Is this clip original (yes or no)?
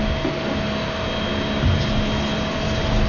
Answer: yes